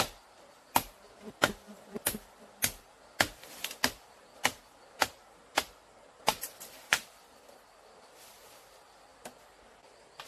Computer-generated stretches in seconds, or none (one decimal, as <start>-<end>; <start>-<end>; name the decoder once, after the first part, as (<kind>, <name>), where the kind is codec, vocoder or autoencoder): 0.0-6.3 (vocoder, BigVGAN v2); 7.0-9.1; 9.7-10.3

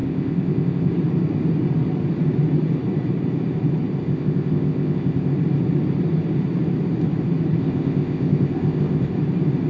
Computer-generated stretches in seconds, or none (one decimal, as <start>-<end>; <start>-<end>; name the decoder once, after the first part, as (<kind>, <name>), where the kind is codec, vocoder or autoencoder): 0.0-0.9 (codec, ZipCodec); 4.0-5.3; 7.6-9.1

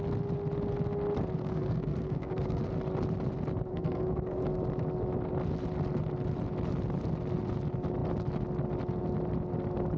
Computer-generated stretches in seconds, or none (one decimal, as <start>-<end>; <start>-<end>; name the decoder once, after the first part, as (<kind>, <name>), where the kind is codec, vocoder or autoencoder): 1.4-2.7 (codec, SNAC); 3.7-4.4

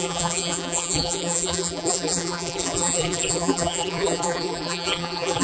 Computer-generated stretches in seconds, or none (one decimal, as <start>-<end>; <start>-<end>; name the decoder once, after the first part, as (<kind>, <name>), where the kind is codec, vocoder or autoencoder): 0.0-5.4 (vocoder, BigVGAN v2)

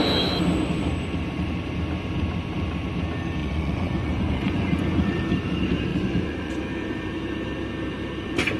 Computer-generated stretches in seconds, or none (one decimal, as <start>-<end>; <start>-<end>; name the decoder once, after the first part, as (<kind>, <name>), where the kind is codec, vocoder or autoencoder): 3.4-5.2 (vocoder, Vocos); 5.9-6.5

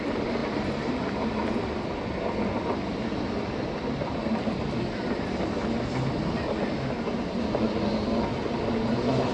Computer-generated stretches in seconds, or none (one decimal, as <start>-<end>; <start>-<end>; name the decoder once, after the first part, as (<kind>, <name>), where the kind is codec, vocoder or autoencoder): none